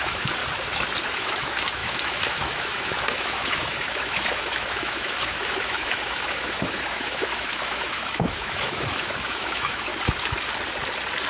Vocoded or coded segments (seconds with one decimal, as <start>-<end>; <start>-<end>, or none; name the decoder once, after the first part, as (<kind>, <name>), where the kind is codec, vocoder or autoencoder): 0.0-0.4 (autoencoder, DAC-VAE); 1.1-9.9